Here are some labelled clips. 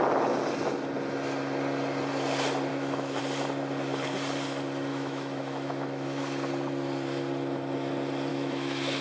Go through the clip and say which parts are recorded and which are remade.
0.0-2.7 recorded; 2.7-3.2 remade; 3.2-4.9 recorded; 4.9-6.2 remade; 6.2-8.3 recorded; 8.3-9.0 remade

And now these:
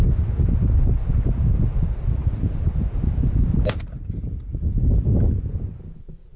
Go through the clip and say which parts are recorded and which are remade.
0.0-6.4 recorded

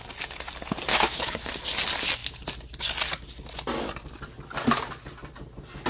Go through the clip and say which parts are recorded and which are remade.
0.0-0.9 recorded; 0.9-1.5 remade; 1.5-5.9 recorded

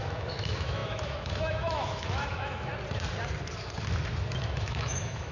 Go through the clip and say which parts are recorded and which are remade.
0.0-2.7 remade; 2.7-4.3 recorded; 4.3-5.3 remade

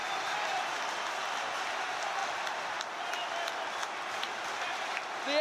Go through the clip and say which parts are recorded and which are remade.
0.0-5.4 recorded